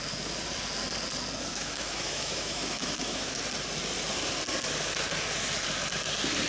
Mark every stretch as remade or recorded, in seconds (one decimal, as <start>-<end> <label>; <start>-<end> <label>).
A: 0.0-1.5 recorded; 1.5-3.4 remade; 3.4-6.5 recorded